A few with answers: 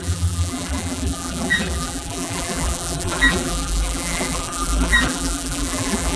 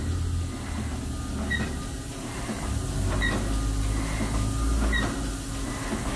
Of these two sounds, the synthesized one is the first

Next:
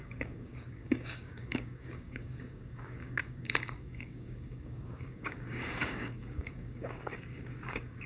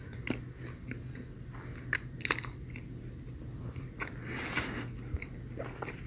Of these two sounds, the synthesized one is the first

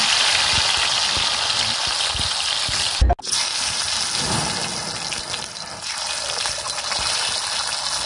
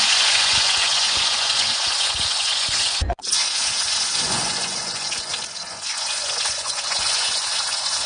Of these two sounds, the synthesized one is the second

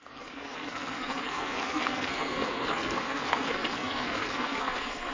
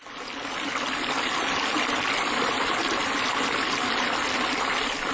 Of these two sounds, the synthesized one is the first